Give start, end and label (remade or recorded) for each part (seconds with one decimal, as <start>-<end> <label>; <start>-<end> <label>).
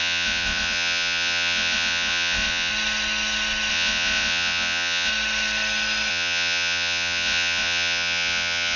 0.0-2.7 remade; 2.7-3.7 recorded; 3.7-5.1 remade; 5.1-6.1 recorded; 6.1-8.8 remade